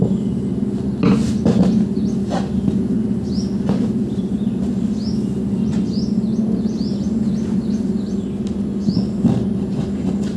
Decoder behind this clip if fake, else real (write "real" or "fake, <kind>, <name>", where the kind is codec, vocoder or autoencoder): real